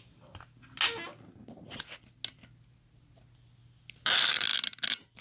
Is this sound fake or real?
real